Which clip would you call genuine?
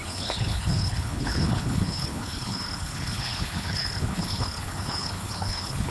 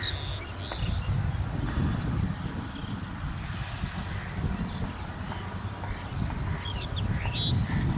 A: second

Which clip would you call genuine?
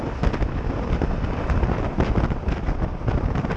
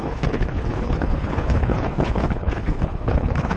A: first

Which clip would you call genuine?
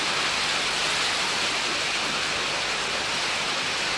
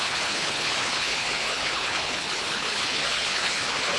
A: first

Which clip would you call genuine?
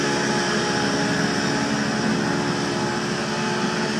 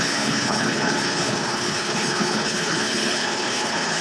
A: first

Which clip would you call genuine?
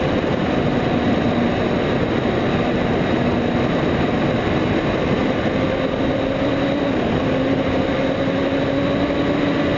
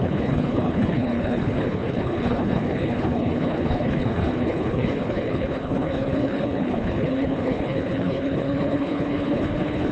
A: first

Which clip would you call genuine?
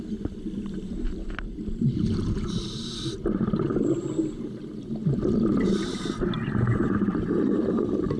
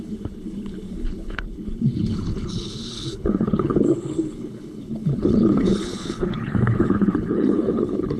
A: first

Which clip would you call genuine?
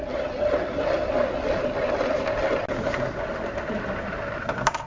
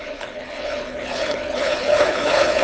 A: first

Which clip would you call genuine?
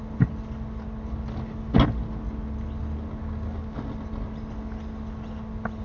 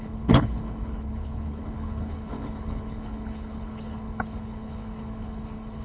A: first